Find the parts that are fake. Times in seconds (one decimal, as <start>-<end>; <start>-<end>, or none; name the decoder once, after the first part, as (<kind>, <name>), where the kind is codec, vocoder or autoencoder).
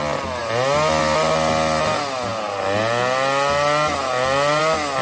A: none